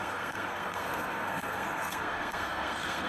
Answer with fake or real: fake